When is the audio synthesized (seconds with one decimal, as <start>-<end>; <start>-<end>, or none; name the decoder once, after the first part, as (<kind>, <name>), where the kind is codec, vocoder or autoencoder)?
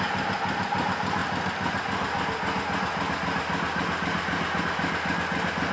none